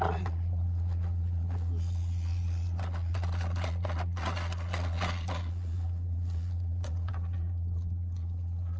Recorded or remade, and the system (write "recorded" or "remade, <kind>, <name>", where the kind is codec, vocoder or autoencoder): remade, vocoder, Vocos